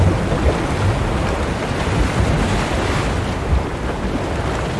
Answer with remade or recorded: remade